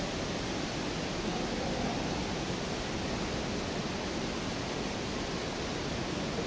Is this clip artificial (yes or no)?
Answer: no